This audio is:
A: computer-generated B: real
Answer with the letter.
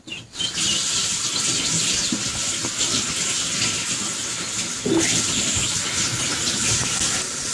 B